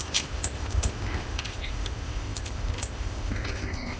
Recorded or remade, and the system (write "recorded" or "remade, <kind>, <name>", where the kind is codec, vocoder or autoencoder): remade, codec, ZipCodec